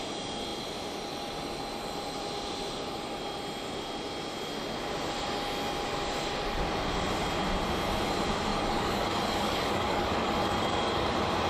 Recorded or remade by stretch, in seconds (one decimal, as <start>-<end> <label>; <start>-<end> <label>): 0.0-8.5 recorded; 8.5-11.1 remade; 11.1-11.5 recorded